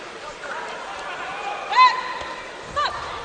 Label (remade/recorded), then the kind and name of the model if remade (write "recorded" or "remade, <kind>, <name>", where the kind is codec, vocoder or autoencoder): recorded